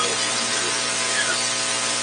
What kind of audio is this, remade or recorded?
recorded